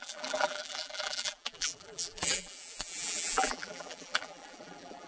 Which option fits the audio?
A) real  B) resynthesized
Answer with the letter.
B